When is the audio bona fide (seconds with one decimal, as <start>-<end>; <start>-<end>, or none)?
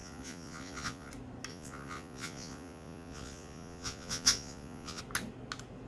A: 1.1-1.5; 5.0-5.9